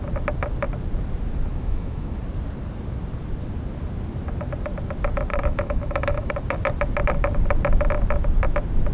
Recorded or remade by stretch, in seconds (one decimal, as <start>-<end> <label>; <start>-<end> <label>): 0.0-1.5 recorded; 1.5-2.2 remade; 2.2-5.3 recorded; 5.3-6.3 remade; 6.3-8.9 recorded